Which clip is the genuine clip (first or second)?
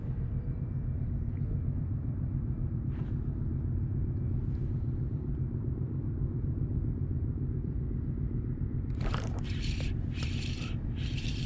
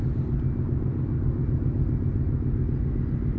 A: second